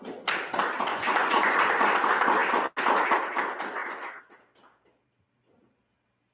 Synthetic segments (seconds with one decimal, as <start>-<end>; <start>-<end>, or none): 0.9-1.7